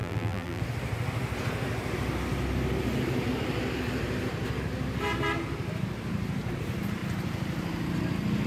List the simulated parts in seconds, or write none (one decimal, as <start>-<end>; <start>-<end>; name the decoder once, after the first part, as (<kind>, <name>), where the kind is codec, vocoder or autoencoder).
0.0-0.6 (vocoder, BigVGAN v2)